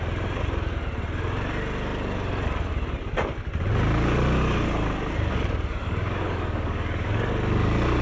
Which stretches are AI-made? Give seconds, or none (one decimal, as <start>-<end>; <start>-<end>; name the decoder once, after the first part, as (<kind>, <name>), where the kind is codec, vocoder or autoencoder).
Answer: 5.7-7.3 (codec, DAC)